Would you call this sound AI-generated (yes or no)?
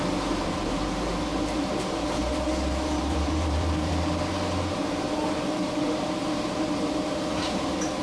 yes